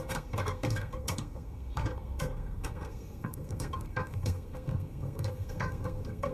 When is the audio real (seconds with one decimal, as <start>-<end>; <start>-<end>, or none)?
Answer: none